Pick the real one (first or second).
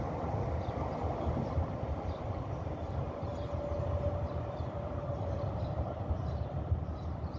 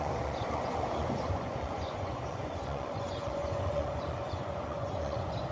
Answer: first